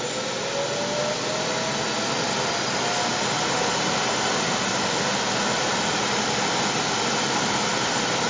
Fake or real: real